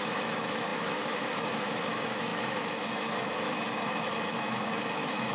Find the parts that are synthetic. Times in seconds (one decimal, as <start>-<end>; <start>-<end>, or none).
0.0-5.3